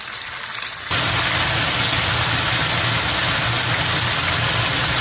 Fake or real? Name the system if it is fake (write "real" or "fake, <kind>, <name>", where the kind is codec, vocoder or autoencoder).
real